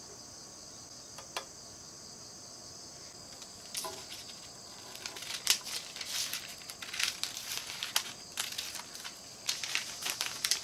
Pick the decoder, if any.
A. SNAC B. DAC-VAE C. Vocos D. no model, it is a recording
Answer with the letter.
D